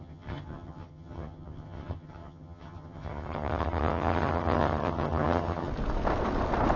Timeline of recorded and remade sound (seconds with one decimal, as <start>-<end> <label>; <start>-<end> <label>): 0.0-5.7 remade; 5.7-6.8 recorded